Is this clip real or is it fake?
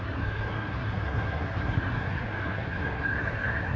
fake